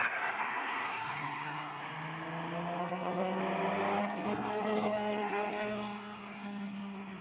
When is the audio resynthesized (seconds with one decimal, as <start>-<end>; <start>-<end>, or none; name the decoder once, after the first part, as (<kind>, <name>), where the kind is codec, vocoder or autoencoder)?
0.0-1.8 (codec, SNAC); 2.8-3.4; 4.0-7.2